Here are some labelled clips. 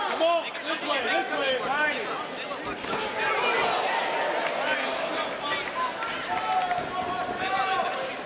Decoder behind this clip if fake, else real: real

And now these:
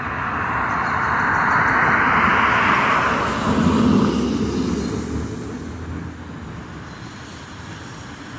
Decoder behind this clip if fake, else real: real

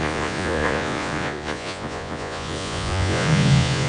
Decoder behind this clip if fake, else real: fake, vocoder, Vocos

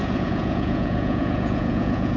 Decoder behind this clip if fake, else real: fake, vocoder, Vocos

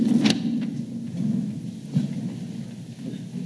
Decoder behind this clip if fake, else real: real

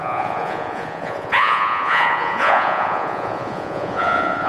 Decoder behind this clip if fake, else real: fake, vocoder, Vocos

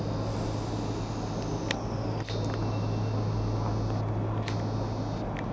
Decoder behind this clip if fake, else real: real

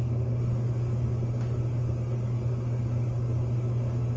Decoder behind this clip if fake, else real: real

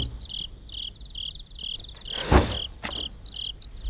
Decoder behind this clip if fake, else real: real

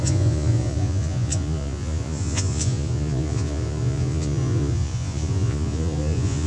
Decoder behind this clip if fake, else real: fake, vocoder, Vocos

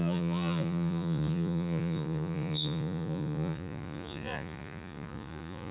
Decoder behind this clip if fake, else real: fake, vocoder, Vocos